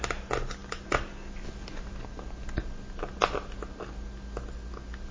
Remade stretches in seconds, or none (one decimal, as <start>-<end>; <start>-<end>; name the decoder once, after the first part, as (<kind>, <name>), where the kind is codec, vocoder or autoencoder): none